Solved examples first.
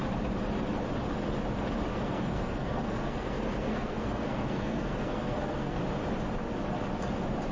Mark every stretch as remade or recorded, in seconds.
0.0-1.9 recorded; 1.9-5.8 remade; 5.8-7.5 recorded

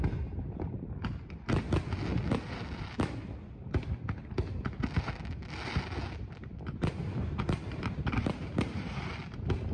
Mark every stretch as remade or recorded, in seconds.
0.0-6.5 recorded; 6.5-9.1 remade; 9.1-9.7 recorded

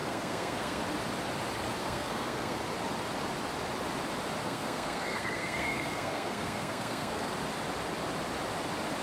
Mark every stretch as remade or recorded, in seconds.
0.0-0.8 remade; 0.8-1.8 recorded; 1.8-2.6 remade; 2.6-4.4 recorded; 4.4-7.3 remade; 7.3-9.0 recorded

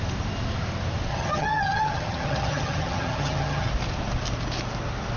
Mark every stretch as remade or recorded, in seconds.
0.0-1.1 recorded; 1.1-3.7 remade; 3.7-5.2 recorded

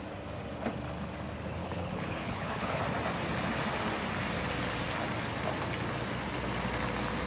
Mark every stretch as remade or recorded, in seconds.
0.0-1.6 recorded; 1.6-2.8 remade; 2.8-7.3 recorded

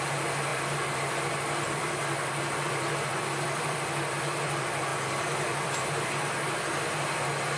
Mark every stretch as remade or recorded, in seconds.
0.0-7.6 remade

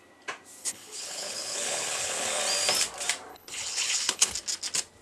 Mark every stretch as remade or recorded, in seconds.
0.0-0.6 recorded; 0.6-2.4 remade; 2.4-3.3 recorded; 3.3-4.3 remade; 4.3-5.0 recorded

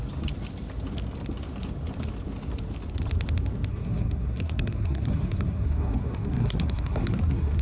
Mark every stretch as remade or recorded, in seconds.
0.0-3.7 recorded; 3.7-7.6 remade